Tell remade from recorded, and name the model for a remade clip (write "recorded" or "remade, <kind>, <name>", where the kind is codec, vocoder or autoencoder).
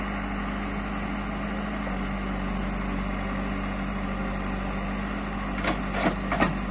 recorded